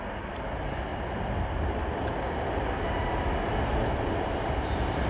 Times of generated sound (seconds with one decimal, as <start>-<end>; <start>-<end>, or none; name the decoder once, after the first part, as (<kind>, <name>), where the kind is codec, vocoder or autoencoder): none